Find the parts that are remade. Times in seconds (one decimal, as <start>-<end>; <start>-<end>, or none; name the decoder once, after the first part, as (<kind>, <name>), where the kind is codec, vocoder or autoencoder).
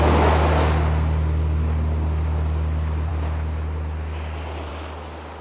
none